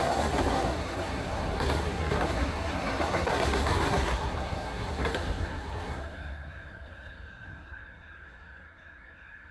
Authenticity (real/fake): fake